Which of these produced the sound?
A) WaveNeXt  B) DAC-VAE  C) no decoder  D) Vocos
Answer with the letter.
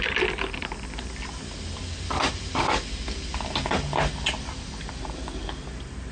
C